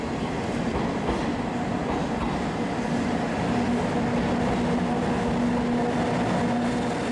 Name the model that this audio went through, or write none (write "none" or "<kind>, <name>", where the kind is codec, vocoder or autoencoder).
none